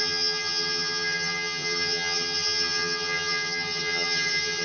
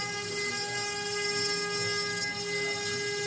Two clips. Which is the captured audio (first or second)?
second